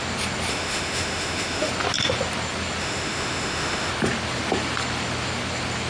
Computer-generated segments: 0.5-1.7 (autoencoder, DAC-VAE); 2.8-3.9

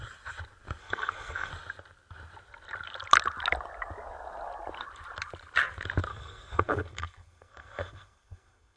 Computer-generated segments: 0.8-1.5 (codec, SNAC); 6.1-8.8

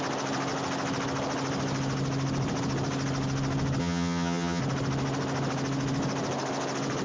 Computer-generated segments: 3.8-4.6 (vocoder, HiFi-GAN)

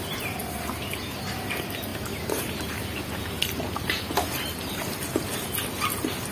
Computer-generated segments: none

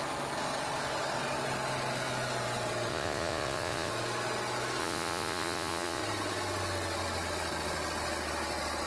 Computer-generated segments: 2.9-3.9 (vocoder, Vocos); 4.8-6.0

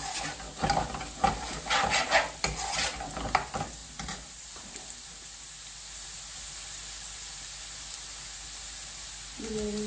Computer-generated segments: none

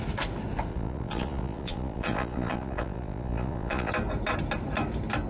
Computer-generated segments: 0.7-3.9 (vocoder, Vocos)